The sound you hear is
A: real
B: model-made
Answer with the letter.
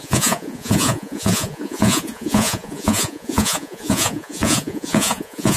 B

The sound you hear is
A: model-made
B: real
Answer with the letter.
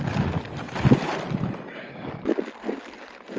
B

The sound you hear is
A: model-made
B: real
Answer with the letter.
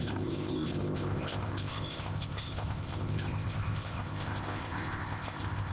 A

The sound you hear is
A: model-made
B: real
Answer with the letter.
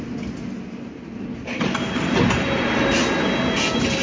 B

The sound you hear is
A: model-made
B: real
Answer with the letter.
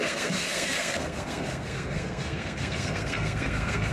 A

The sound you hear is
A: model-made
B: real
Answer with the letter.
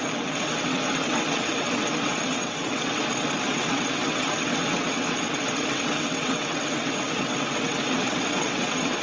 A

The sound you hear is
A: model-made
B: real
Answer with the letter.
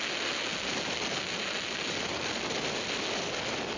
B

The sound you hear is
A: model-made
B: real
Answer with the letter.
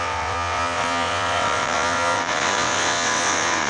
A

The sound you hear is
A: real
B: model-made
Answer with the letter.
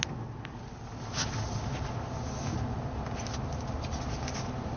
A